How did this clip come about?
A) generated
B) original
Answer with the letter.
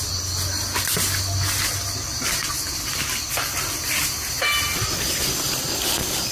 B